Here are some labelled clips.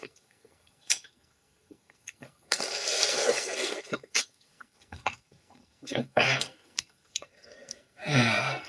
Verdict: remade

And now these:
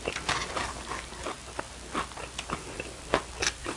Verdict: recorded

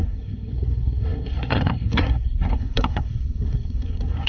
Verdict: remade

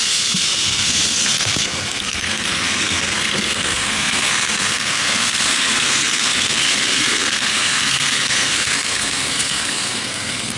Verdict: remade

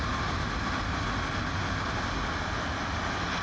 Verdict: recorded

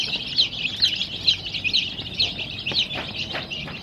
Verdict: recorded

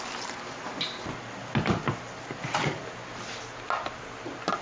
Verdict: recorded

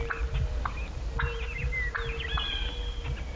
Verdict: recorded